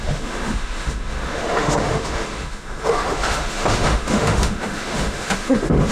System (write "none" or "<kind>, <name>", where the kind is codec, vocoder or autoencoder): autoencoder, DAC-VAE